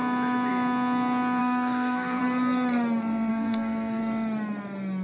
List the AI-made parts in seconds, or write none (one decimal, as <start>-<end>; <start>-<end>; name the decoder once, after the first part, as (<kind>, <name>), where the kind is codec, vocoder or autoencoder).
1.4-2.2 (codec, SNAC); 3.3-4.0